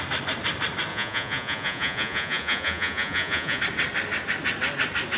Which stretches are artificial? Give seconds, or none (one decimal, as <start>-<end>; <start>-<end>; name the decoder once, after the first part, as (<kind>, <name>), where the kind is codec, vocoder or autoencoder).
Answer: 0.9-3.6 (vocoder, Vocos)